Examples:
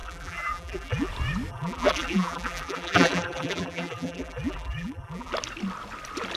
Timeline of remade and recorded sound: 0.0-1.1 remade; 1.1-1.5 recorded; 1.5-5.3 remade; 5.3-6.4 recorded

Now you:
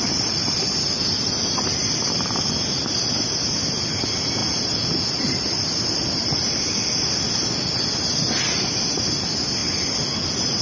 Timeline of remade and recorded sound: 0.0-10.6 recorded

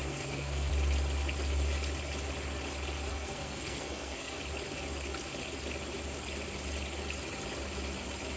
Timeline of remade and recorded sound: 0.0-0.7 remade; 0.7-3.1 recorded; 3.1-4.4 remade; 4.4-8.4 recorded

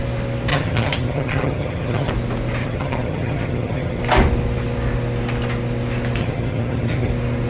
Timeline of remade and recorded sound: 0.0-0.5 recorded; 0.5-2.1 remade; 2.1-2.6 recorded; 2.6-4.0 remade; 4.0-6.2 recorded; 6.2-7.1 remade; 7.1-7.5 recorded

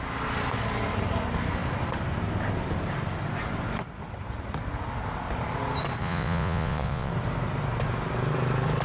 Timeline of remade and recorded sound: 0.0-6.0 recorded; 6.0-7.1 remade; 7.1-8.8 recorded

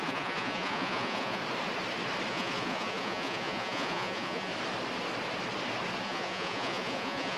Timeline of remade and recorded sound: 0.0-1.4 remade; 1.4-2.3 recorded; 2.3-4.5 remade; 4.5-6.0 recorded; 6.0-7.4 remade

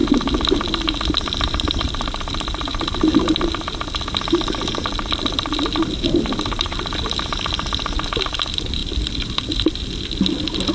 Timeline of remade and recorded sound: 0.0-8.8 recorded; 8.8-9.8 remade; 9.8-10.7 recorded

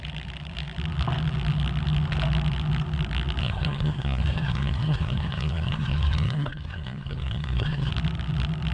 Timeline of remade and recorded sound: 0.0-3.4 recorded; 3.4-7.9 remade; 7.9-8.7 recorded